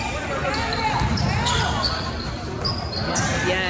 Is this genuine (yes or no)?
yes